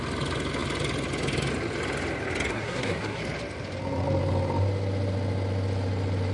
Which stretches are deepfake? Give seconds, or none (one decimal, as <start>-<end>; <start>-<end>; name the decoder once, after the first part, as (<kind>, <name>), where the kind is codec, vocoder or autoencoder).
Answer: 2.5-3.2 (codec, SNAC)